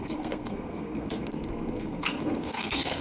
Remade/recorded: remade